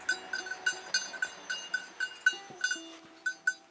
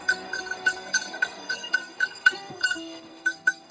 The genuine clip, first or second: first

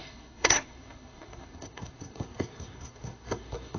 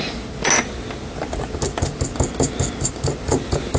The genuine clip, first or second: second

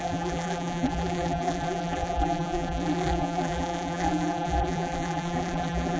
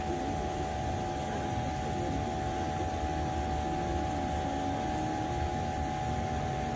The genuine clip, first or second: second